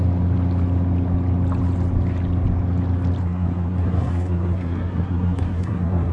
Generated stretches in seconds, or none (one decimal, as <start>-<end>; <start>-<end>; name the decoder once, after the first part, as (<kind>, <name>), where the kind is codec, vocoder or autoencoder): 3.2-6.1 (codec, SNAC)